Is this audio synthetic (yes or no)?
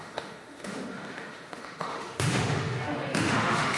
yes